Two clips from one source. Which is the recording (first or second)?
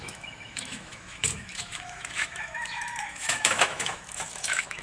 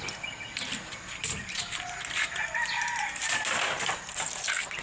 second